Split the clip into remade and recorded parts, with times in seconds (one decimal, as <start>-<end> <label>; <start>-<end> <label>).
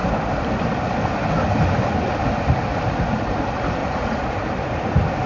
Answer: 0.0-3.8 recorded; 3.8-4.4 remade; 4.4-5.3 recorded